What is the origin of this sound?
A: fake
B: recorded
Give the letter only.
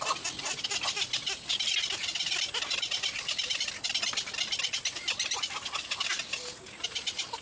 B